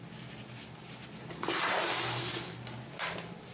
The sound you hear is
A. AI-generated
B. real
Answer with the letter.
B